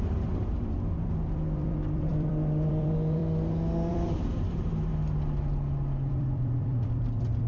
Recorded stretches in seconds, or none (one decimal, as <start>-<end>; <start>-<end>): 3.2-3.9; 4.9-6.1